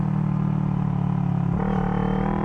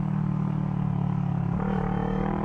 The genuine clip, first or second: first